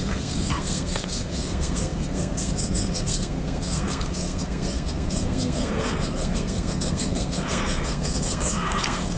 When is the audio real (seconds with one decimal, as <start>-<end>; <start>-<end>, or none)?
none